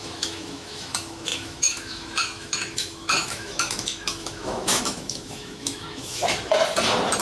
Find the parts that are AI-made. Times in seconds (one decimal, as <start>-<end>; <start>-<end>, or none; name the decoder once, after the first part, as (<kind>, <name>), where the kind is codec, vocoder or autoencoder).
0.0-6.2 (autoencoder, DAC-VAE)